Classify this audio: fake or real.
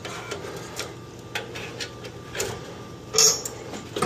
real